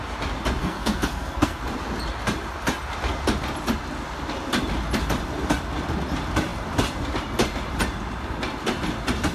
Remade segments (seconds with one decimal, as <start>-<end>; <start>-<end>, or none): 0.6-1.6